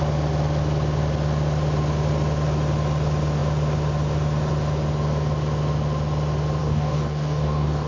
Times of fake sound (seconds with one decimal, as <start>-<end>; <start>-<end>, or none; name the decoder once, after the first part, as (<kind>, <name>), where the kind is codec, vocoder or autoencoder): 6.6-7.9 (codec, DAC)